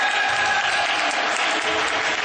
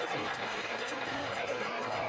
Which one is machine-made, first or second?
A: second